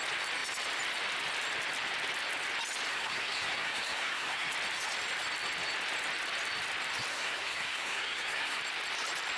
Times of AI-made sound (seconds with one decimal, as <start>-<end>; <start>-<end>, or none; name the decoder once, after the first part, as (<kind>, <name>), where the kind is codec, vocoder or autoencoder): 2.9-4.5 (codec, SNAC); 7.1-8.6